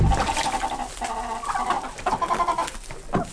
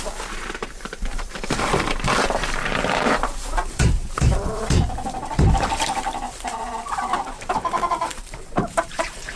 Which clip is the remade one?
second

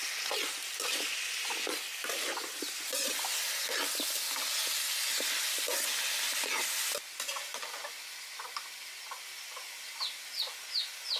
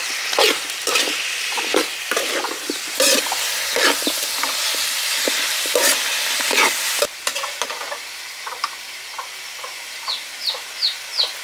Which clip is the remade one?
second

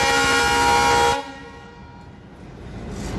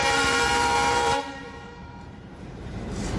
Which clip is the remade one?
second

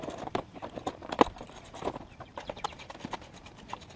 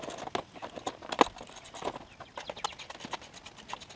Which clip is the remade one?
first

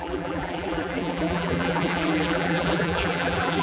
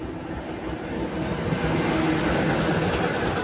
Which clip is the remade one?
first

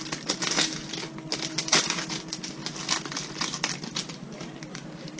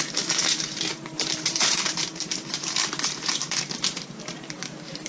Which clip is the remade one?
second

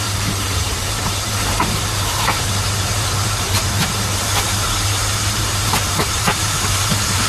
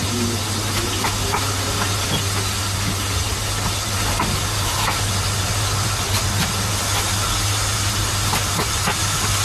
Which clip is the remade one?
first